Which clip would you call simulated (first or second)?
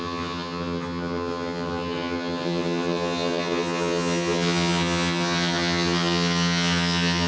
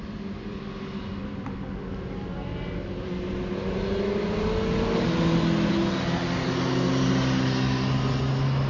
first